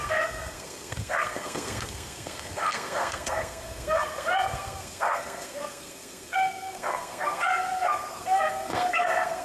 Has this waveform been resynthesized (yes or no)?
yes